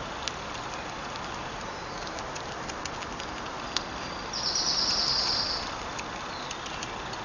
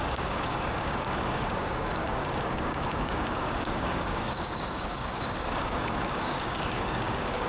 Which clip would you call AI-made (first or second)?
second